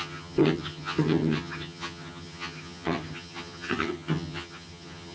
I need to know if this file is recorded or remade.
remade